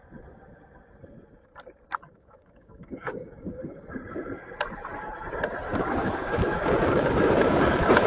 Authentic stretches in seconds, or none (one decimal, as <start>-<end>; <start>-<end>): 0.0-2.1; 3.6-5.7